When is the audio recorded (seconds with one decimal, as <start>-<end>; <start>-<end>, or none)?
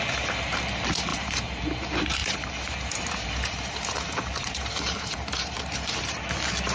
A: 0.0-1.1; 1.6-2.2; 6.2-6.7